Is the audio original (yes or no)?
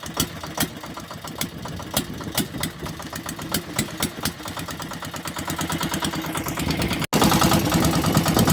yes